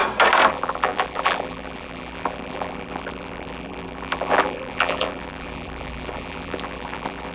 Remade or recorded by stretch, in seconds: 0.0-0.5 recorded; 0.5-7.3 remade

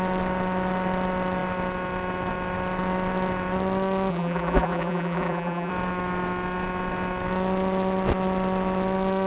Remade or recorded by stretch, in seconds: 0.0-4.1 recorded; 4.1-5.7 remade; 5.7-9.3 recorded

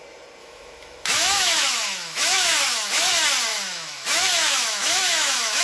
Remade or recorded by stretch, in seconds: 0.0-0.4 recorded; 0.4-3.1 remade; 3.1-3.5 recorded; 3.5-5.6 remade

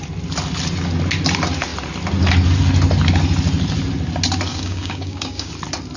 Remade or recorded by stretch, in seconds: 0.0-4.5 recorded; 4.5-5.5 remade; 5.5-6.0 recorded

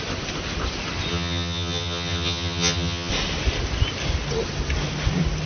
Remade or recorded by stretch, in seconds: 0.0-1.1 recorded; 1.1-3.1 remade; 3.1-5.5 recorded

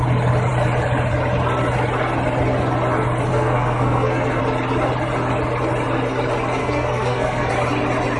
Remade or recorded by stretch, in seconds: 0.0-3.3 recorded; 3.3-4.4 remade; 4.4-6.6 recorded; 6.6-7.5 remade; 7.5-8.2 recorded